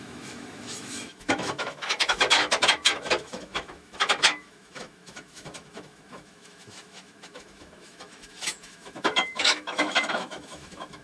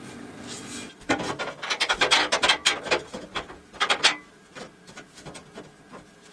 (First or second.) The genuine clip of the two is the second